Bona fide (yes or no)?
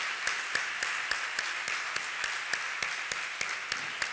yes